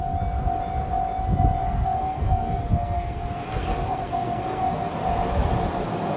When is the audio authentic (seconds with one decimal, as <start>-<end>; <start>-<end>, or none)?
0.0-1.6; 4.9-6.2